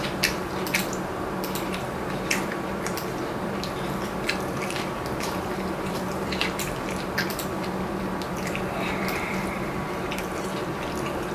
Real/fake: fake